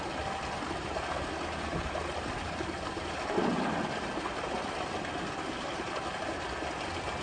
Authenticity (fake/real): real